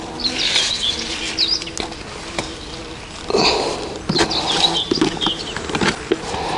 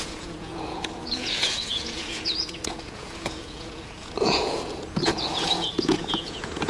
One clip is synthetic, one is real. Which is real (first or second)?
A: first